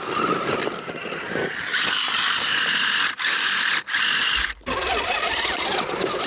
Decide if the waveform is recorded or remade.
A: recorded